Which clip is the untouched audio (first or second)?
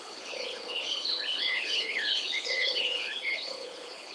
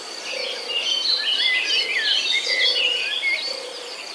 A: second